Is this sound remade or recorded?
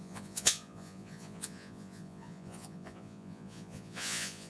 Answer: remade